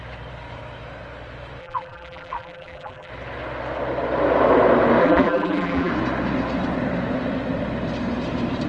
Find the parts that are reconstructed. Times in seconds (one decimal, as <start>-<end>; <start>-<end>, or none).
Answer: 1.6-3.1; 5.0-5.9

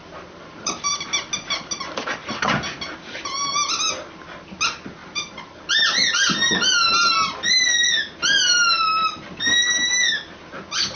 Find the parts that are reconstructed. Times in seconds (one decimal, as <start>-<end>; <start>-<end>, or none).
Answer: 0.0-0.9; 5.0-5.6